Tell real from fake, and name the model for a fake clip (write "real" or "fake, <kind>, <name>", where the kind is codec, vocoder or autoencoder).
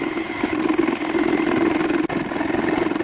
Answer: real